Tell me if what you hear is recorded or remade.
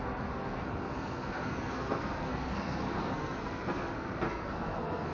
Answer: remade